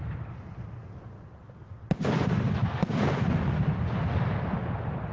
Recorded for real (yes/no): yes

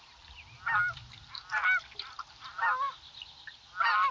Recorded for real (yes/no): yes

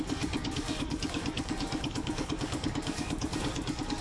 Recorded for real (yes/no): no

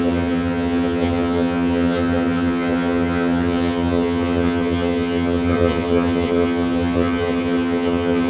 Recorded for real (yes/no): no